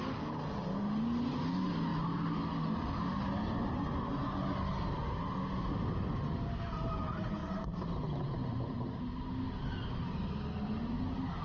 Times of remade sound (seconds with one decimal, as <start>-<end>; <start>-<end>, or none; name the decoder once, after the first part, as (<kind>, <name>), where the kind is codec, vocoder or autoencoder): 1.9-2.4 (vocoder, BigVGAN v2); 7.4-9.0